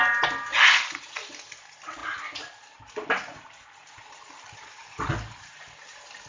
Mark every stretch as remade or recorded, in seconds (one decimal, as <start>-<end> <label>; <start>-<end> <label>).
0.0-6.3 recorded